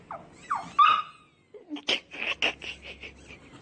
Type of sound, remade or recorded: recorded